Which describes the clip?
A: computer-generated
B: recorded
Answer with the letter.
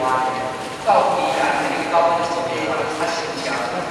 B